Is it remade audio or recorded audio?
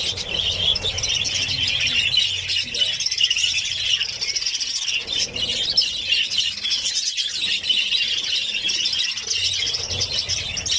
recorded